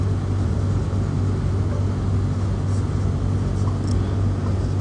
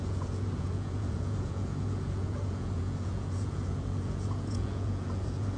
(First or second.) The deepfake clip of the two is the second